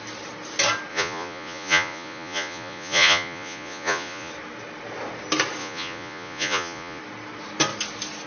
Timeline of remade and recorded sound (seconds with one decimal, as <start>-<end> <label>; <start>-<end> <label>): 0.0-0.9 recorded; 0.9-4.3 remade; 4.3-5.6 recorded; 5.6-7.0 remade; 7.0-8.3 recorded